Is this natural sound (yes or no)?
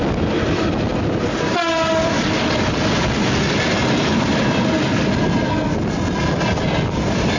yes